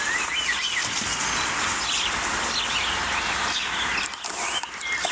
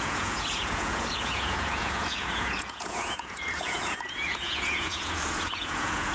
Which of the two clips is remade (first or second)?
second